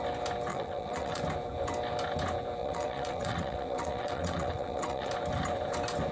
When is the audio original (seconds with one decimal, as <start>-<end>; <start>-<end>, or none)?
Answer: 0.0-0.5; 1.2-2.6; 5.1-6.1